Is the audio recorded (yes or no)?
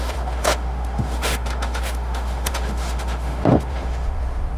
no